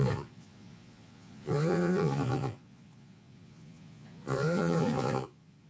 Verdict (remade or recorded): remade